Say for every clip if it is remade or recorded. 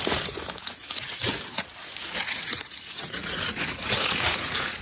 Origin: remade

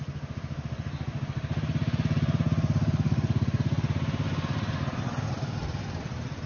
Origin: recorded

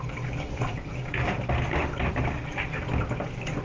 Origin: recorded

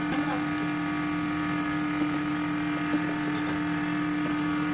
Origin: recorded